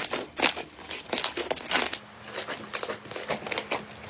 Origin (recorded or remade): recorded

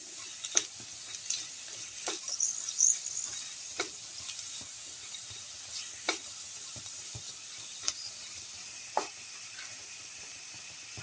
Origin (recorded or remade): recorded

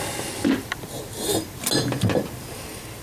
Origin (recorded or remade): recorded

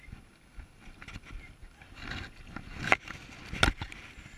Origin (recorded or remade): recorded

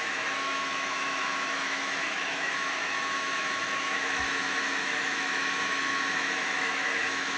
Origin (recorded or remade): remade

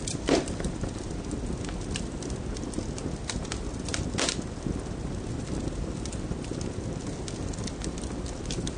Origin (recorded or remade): recorded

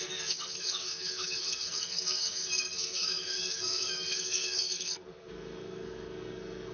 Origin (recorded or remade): remade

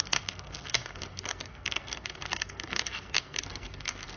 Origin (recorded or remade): remade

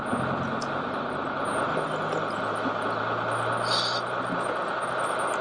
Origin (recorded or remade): recorded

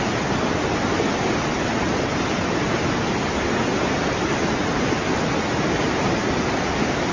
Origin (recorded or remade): recorded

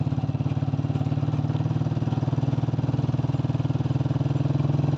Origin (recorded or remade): recorded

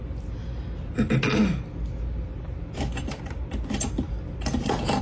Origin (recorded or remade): recorded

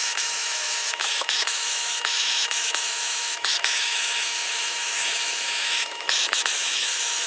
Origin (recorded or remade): remade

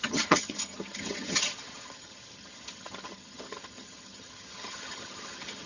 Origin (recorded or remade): remade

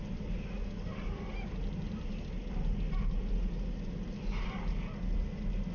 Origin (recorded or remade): recorded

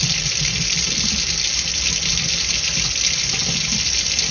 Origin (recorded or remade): recorded